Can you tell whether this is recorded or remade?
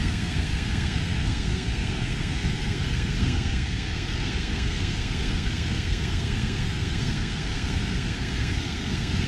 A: remade